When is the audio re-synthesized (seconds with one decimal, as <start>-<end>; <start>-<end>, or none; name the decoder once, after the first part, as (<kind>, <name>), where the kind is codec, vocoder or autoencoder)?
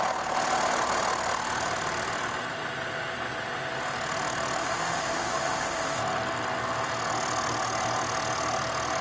4.6-6.0 (autoencoder, DAC-VAE)